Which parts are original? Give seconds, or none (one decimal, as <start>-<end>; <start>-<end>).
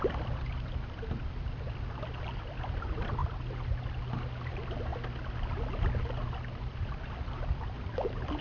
3.2-4.5; 4.9-6.6